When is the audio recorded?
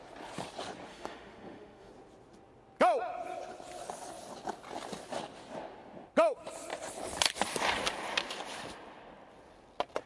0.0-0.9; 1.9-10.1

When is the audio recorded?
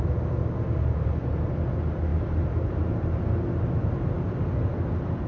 0.0-0.4; 1.5-5.3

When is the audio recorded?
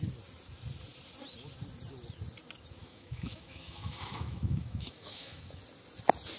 0.0-2.8; 5.6-6.4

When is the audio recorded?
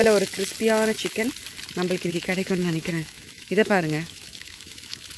0.0-2.1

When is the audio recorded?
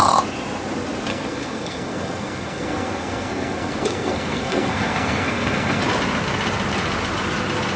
0.0-1.1; 5.8-7.8